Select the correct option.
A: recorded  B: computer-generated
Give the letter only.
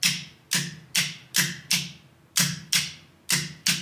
A